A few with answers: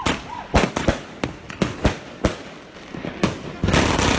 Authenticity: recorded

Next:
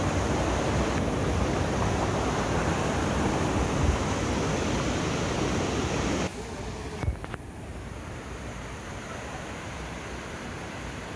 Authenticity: recorded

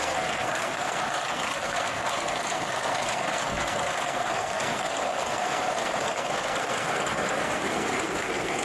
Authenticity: remade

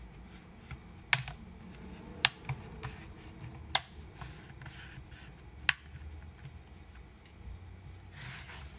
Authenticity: recorded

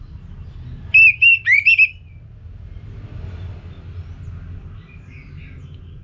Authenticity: recorded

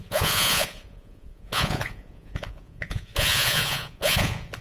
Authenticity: remade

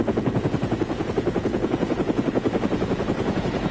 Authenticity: remade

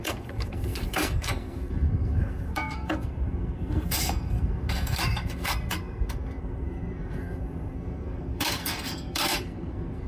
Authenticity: remade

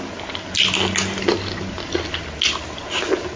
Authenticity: recorded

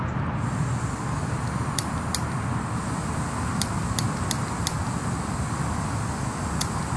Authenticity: recorded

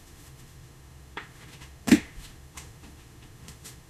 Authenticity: remade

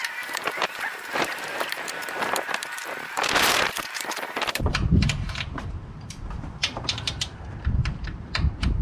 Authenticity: remade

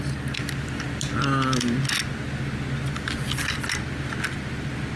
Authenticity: recorded